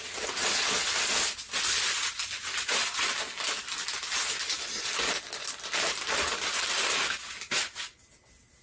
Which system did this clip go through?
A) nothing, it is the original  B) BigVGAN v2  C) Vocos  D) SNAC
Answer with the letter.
A